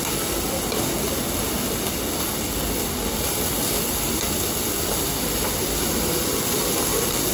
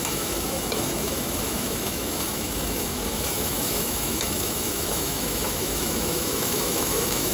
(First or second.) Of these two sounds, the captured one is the first